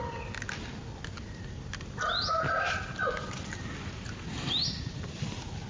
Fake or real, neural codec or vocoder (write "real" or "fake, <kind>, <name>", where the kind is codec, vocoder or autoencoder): real